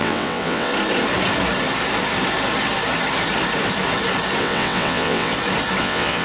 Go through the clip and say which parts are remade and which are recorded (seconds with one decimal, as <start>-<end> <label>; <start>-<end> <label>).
0.0-0.7 remade; 0.7-4.4 recorded; 4.4-5.3 remade; 5.3-5.8 recorded; 5.8-6.2 remade